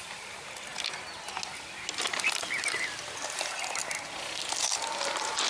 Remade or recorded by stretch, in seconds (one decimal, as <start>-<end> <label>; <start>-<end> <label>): 0.0-5.5 recorded